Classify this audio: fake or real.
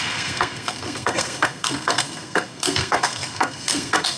fake